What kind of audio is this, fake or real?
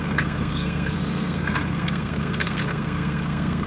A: fake